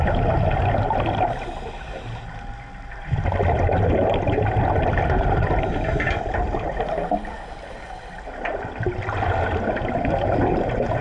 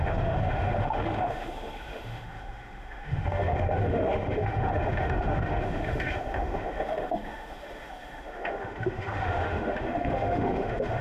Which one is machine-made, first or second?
second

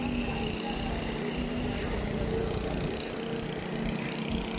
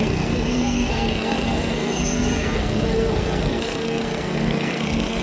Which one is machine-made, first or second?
second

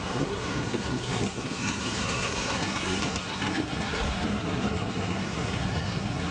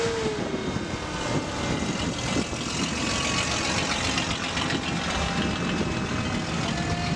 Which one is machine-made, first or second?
first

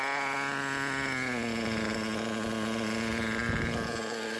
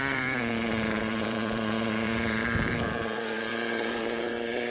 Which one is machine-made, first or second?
second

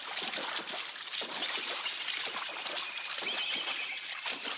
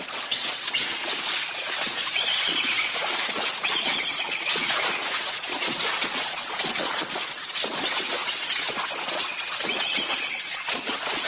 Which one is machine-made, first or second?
second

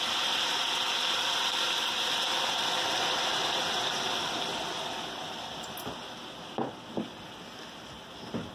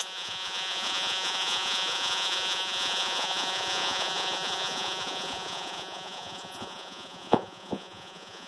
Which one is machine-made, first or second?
second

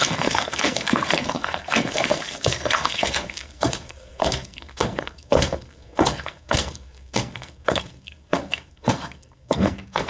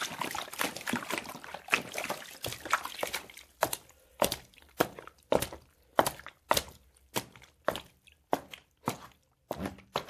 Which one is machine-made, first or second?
first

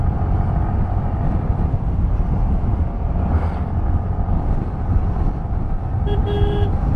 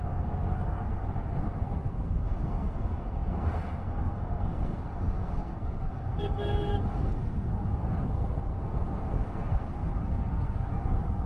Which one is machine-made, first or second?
second